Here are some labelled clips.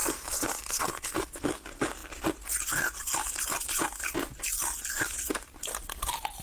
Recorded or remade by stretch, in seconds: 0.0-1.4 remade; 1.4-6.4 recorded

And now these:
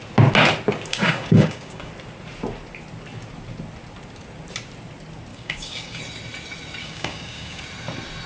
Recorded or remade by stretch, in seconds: 0.0-0.9 recorded; 0.9-1.9 remade; 1.9-5.3 recorded; 5.3-6.0 remade; 6.0-6.8 recorded; 6.8-7.6 remade; 7.6-8.3 recorded